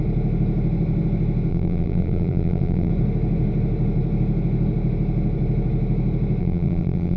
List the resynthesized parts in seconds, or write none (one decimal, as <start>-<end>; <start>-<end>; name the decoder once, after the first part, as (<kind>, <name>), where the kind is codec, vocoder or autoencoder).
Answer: 1.5-2.9 (vocoder, BigVGAN v2); 6.4-7.2